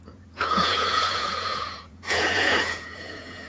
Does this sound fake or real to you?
fake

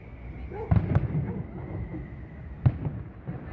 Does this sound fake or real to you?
real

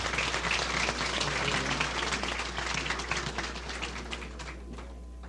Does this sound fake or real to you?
real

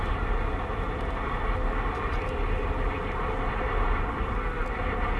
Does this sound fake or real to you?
real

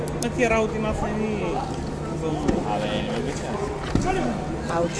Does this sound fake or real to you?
real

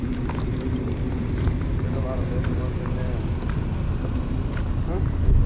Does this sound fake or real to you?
real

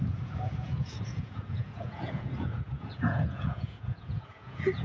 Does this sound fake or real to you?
fake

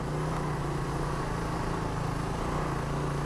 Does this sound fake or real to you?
real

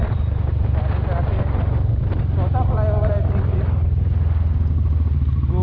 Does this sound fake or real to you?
real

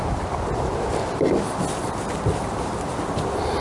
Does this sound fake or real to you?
real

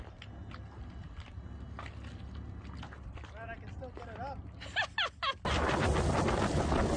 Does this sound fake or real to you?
real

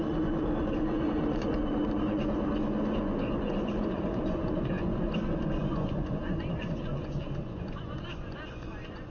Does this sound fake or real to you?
fake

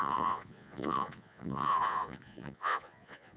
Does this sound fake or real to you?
fake